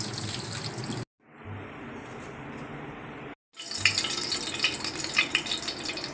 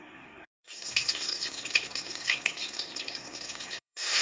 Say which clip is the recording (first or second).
first